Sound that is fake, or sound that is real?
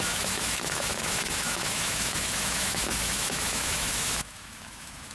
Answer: fake